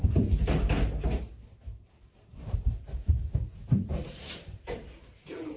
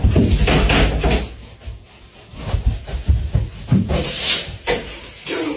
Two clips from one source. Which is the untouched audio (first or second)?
second